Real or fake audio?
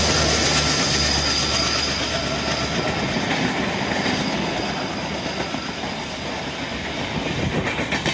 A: real